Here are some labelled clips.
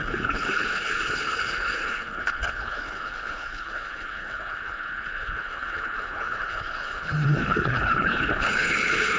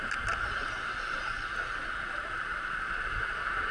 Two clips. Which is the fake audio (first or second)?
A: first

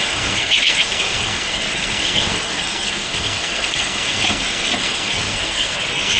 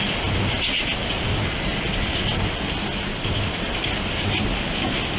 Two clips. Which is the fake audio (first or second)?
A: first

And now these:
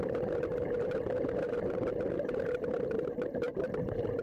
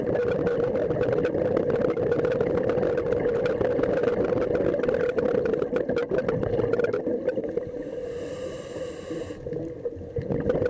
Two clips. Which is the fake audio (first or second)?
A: first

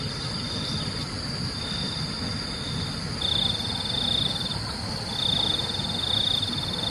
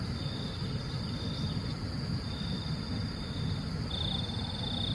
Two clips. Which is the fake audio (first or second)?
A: second